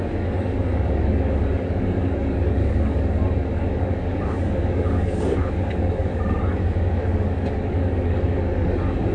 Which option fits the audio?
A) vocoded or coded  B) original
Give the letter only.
A